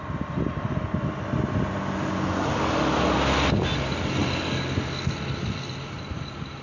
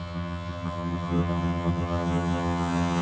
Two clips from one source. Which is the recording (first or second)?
first